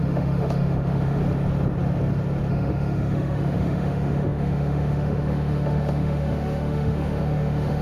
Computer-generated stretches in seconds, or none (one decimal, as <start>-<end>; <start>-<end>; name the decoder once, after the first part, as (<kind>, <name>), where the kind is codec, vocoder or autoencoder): 0.0-1.2 (autoencoder, DAC-VAE); 2.5-7.8